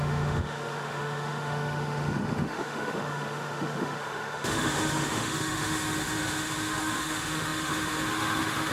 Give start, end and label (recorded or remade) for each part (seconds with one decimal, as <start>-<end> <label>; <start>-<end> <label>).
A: 0.0-8.7 remade